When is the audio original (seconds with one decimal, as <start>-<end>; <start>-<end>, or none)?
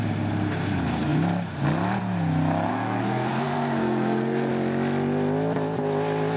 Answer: 0.0-2.7; 4.5-6.4